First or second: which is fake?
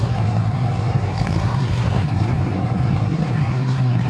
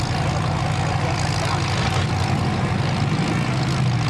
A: first